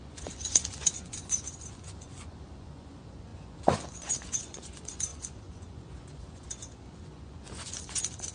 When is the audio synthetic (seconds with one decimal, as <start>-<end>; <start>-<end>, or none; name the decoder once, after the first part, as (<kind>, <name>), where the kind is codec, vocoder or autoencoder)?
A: 0.0-8.3 (vocoder, Vocos)